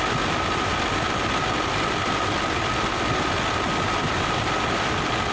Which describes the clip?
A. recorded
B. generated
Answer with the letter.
A